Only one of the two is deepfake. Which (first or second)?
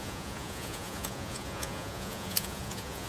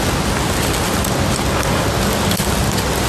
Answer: first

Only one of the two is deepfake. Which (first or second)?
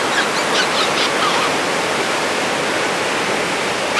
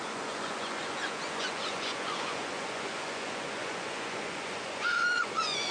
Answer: second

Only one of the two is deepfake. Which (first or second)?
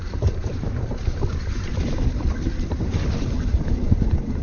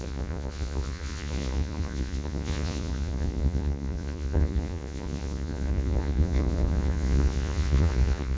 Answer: second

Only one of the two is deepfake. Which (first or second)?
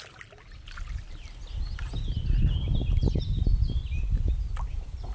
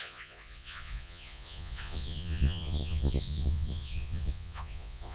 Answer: second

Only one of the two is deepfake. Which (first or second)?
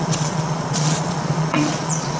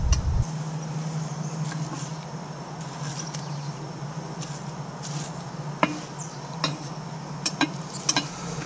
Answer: first